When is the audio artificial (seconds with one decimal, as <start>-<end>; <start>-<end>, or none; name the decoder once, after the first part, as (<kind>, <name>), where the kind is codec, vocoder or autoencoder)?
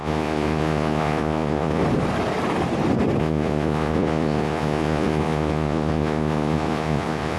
0.0-1.8 (vocoder, Vocos); 3.2-7.4